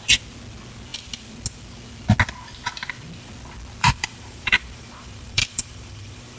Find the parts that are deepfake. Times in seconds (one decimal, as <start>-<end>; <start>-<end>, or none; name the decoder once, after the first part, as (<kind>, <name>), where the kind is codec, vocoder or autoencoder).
3.8-6.4 (vocoder, BigVGAN v2)